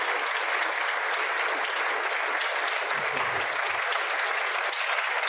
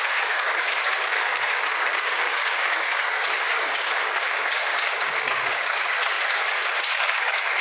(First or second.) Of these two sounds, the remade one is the second